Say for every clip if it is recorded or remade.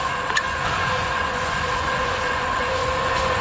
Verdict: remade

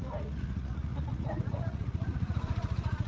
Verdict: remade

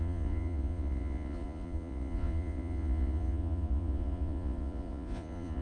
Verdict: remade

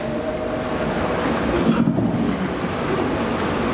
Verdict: recorded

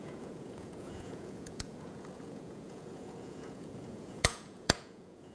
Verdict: remade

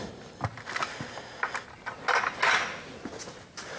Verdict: recorded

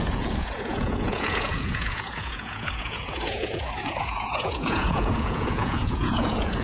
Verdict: remade